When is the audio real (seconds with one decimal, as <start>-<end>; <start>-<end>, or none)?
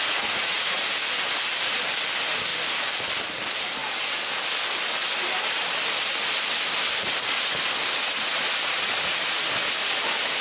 0.8-10.4